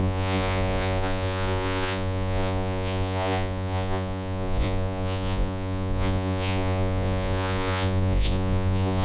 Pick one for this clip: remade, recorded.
remade